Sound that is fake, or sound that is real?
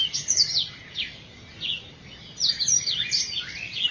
real